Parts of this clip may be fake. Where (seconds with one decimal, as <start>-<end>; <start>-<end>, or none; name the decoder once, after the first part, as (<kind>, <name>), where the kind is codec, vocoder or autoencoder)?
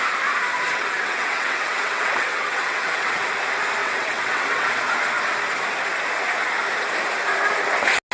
0.7-3.3 (vocoder, WaveNeXt); 3.8-4.8